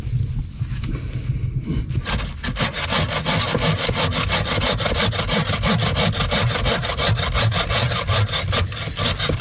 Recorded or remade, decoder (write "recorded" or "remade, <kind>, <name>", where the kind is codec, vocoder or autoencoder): recorded